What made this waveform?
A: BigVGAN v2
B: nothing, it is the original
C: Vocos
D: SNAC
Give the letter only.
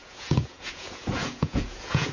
C